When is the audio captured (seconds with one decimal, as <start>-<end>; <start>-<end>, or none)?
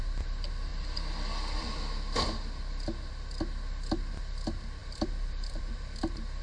0.0-0.7; 3.1-4.8; 5.7-6.4